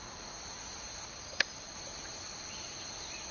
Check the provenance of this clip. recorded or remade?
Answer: recorded